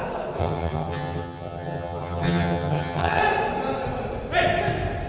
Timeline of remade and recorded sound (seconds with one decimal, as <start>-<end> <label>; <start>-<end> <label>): 0.0-0.4 recorded; 0.4-3.2 remade; 3.2-5.1 recorded